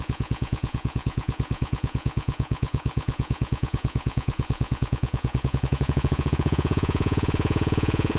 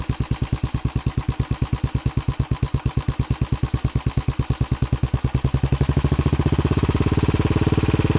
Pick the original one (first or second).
second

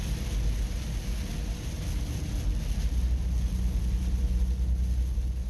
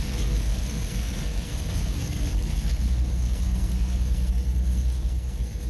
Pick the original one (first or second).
first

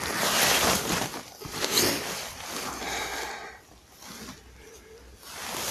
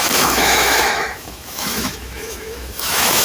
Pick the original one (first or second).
first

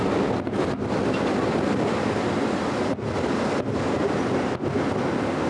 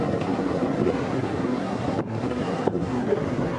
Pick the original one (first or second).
first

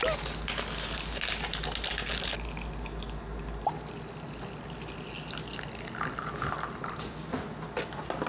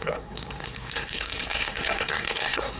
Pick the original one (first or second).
first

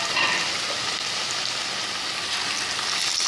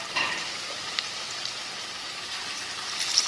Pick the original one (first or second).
first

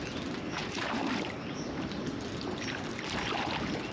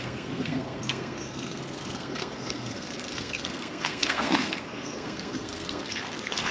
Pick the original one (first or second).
first